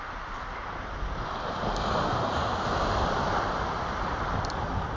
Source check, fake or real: real